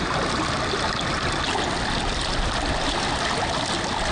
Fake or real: real